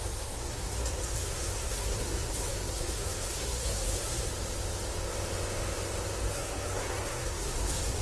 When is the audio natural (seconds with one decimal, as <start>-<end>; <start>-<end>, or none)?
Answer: 4.3-6.3